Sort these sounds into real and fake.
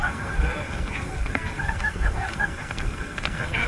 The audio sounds fake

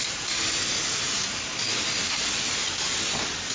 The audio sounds real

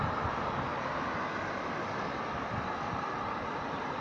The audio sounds real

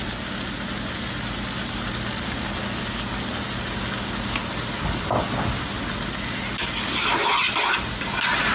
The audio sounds real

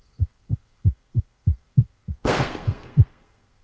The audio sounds fake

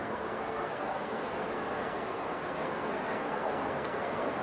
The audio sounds fake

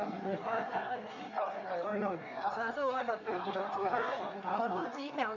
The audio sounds fake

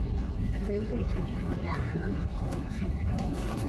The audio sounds fake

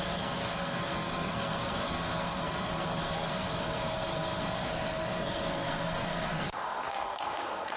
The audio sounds fake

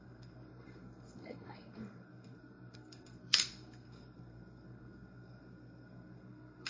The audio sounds fake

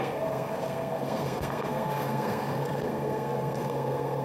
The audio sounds fake